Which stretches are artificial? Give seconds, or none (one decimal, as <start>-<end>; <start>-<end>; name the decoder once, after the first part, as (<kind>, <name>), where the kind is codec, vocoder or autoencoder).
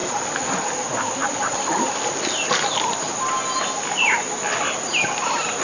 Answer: 0.0-0.6 (vocoder, BigVGAN v2); 1.2-2.6